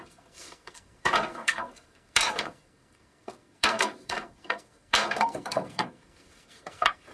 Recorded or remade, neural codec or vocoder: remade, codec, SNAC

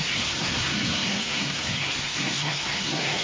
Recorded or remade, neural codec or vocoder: remade, codec, SNAC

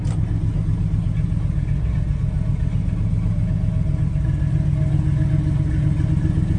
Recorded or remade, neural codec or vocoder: recorded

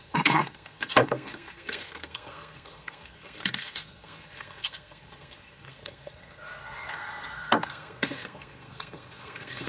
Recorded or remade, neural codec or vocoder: remade, codec, SNAC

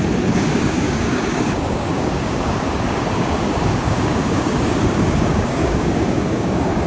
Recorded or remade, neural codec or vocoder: remade, codec, DAC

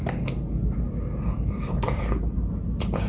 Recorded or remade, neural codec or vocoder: recorded